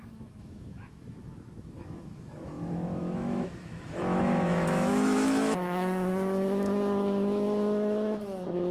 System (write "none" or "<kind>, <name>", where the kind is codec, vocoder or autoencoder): autoencoder, DAC-VAE